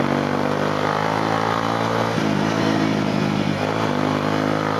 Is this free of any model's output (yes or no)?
yes